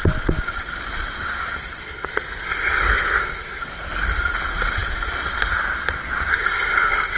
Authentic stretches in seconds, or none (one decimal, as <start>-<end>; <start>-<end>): 0.0-1.8; 3.6-6.3